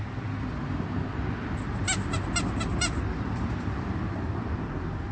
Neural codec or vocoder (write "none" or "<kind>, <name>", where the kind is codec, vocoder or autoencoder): none